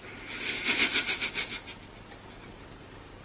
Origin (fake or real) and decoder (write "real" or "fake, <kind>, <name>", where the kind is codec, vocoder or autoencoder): real